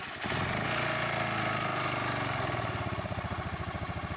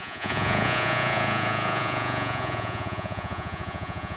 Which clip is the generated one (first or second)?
second